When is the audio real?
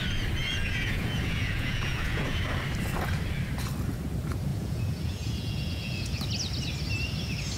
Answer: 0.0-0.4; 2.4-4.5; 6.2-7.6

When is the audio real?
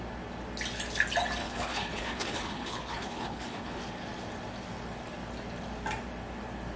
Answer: 0.0-1.4; 3.8-6.8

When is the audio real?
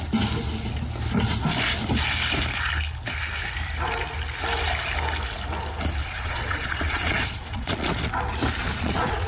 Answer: 0.0-6.0; 7.9-8.6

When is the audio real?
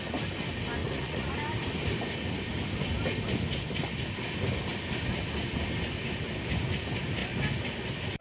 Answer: 0.0-0.8; 1.3-8.2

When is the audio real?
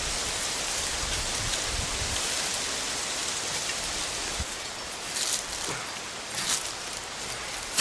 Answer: 0.0-7.8